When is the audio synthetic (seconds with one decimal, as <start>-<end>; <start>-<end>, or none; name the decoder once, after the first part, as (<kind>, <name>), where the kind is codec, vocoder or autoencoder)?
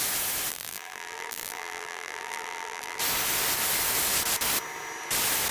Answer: 0.5-3.0 (vocoder, BigVGAN v2)